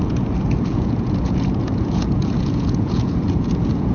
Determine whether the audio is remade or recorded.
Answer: remade